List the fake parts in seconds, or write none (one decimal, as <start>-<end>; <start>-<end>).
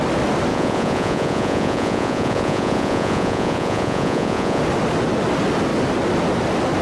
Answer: 0.5-4.6